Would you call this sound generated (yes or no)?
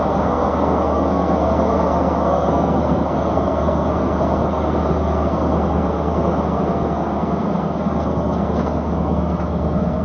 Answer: yes